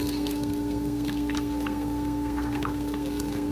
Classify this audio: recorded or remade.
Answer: remade